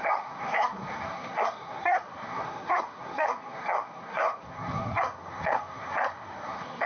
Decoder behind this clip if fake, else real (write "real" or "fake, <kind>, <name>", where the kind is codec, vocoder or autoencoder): fake, codec, SNAC